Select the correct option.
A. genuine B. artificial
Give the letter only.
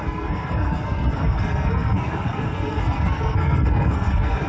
B